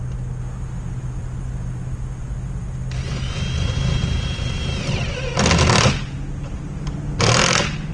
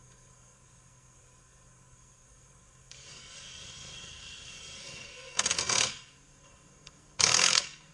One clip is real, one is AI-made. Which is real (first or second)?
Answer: first